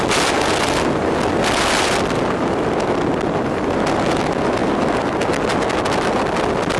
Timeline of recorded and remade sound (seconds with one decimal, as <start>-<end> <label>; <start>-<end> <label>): 0.0-6.8 recorded